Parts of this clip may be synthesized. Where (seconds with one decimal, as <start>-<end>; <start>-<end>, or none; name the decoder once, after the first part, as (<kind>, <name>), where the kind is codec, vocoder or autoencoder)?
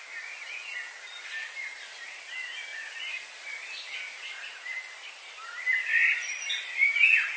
none